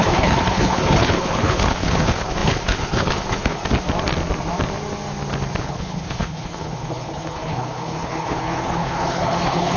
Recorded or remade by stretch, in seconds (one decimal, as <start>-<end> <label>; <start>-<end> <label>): 0.0-3.6 remade; 3.6-5.6 recorded; 5.6-9.8 remade